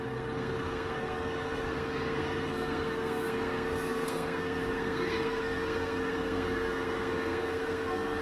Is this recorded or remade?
remade